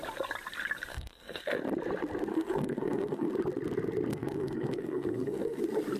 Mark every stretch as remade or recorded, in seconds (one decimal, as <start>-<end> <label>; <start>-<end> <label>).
0.0-0.9 recorded; 0.9-1.6 remade; 1.6-2.3 recorded; 2.3-3.3 remade; 3.3-4.1 recorded; 4.1-5.6 remade; 5.6-6.0 recorded